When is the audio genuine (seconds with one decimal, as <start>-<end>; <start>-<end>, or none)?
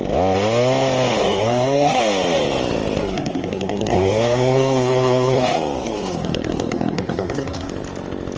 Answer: 0.0-1.2; 2.0-3.0; 7.7-8.4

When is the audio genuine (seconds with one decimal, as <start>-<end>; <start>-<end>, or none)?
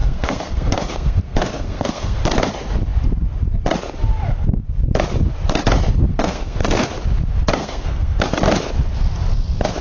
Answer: 2.2-6.1; 6.8-7.6; 8.2-9.8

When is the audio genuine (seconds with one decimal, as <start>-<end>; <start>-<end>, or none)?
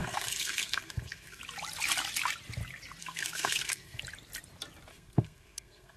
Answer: 1.4-3.0; 4.0-4.9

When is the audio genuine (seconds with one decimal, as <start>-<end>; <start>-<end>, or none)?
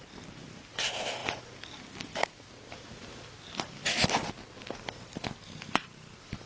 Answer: 0.0-6.5